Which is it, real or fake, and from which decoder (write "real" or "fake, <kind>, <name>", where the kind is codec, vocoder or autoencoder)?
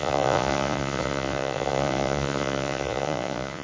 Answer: fake, vocoder, Vocos